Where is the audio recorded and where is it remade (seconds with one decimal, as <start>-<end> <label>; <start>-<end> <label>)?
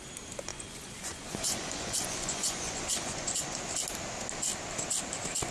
0.0-0.5 recorded; 0.5-3.6 remade; 3.6-5.5 recorded